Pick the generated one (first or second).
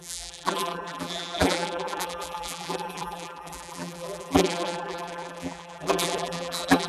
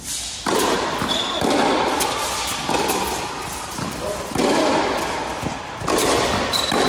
first